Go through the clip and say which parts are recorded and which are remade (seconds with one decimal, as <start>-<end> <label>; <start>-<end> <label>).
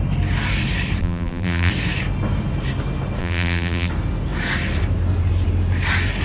0.0-1.0 recorded; 1.0-1.7 remade; 1.7-3.2 recorded; 3.2-3.9 remade; 3.9-6.2 recorded